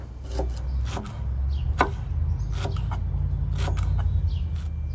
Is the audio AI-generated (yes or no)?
no